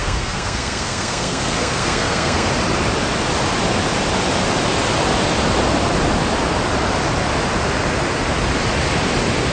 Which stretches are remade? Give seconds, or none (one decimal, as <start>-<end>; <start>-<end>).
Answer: 0.0-2.5